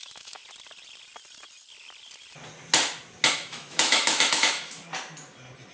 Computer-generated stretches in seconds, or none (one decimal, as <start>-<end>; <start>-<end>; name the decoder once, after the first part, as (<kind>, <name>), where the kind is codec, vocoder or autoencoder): 0.0-0.4 (autoencoder, DAC-VAE); 3.3-4.8